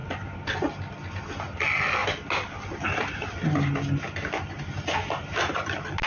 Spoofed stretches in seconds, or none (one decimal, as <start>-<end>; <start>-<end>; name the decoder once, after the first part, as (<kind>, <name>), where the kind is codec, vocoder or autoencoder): none